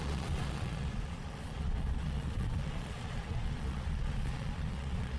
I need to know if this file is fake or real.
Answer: fake